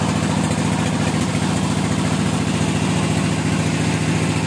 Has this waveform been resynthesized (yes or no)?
no